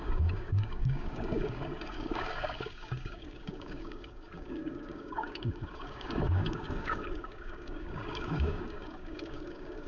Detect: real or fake fake